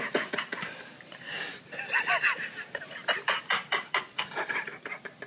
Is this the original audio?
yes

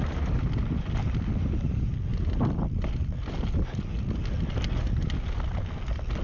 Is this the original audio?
yes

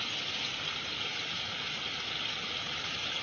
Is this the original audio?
yes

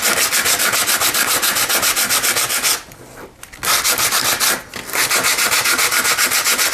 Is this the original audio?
yes